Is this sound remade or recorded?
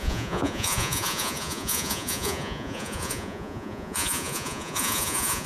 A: remade